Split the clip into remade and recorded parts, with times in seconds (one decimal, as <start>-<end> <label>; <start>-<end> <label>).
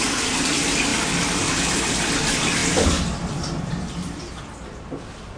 0.0-0.9 recorded; 0.9-1.6 remade; 1.6-2.6 recorded; 2.6-4.4 remade; 4.4-5.4 recorded